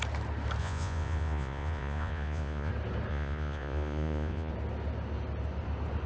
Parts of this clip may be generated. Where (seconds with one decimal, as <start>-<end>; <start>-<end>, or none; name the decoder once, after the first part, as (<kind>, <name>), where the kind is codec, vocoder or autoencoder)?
0.6-2.7 (vocoder, Vocos); 3.1-4.5